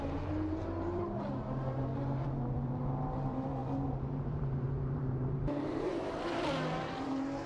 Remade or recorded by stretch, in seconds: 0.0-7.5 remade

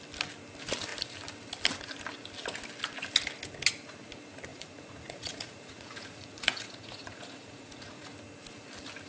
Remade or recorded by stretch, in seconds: 0.0-4.5 recorded; 4.5-8.1 remade; 8.1-9.1 recorded

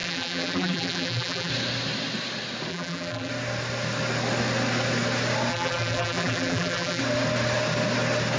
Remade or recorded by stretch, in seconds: 0.0-1.5 remade; 1.5-2.7 recorded; 2.7-3.3 remade; 3.3-5.5 recorded; 5.5-7.0 remade; 7.0-8.4 recorded

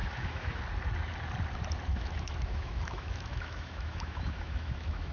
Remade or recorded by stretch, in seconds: 0.0-0.6 remade; 0.6-1.9 recorded; 1.9-5.1 remade

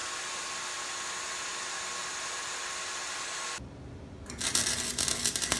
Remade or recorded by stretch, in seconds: 0.0-5.6 recorded

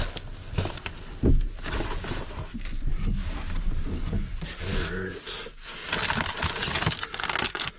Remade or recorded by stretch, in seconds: 0.0-2.9 recorded; 2.9-4.9 remade; 4.9-7.8 recorded